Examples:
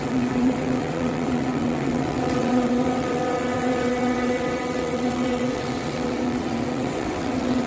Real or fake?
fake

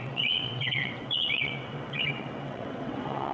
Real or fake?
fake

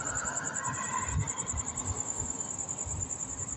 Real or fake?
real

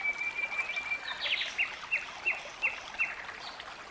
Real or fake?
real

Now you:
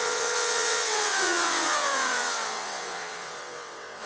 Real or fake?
fake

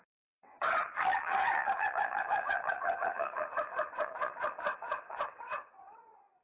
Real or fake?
fake